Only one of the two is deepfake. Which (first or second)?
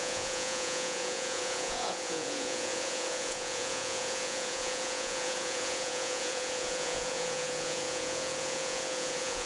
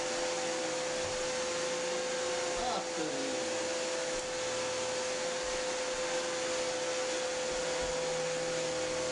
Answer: first